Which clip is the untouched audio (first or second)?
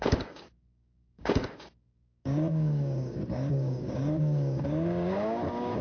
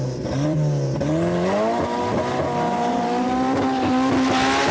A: second